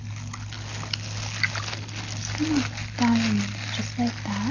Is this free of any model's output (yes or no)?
yes